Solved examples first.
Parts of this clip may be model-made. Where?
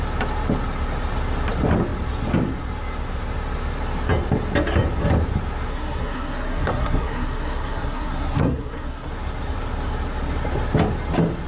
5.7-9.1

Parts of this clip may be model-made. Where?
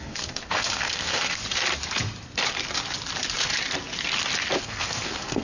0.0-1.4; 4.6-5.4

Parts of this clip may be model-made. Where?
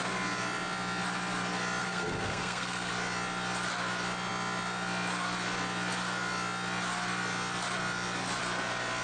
1.8-2.9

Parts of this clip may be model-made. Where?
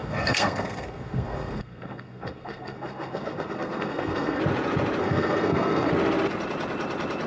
0.0-4.4; 5.0-5.9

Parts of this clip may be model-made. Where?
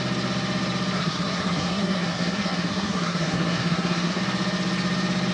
1.0-4.2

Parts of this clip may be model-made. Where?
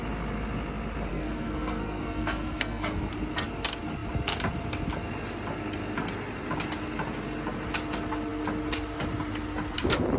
1.1-3.1